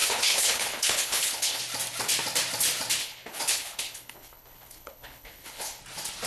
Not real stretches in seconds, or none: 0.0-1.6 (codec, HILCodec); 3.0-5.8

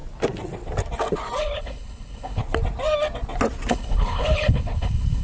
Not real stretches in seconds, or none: 1.4-2.4 (codec, HILCodec); 3.7-5.2

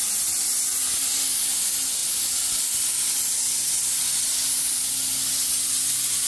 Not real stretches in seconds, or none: none

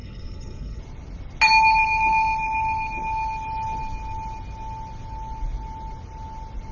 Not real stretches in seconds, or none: 0.0-0.8 (codec, HILCodec)